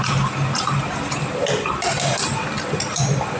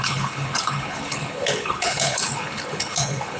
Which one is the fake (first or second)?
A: second